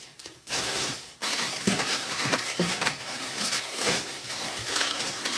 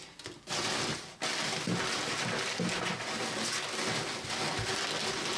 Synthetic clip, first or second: first